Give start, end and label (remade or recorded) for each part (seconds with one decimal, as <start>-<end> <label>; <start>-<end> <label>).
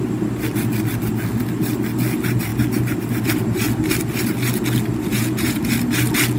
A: 0.0-5.1 recorded; 5.1-5.7 remade; 5.7-6.4 recorded